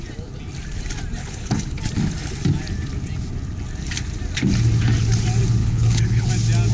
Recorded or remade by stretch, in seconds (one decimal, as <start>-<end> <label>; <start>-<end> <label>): 0.0-1.2 recorded; 1.2-1.8 remade; 1.8-5.6 recorded; 5.6-6.3 remade; 6.3-6.7 recorded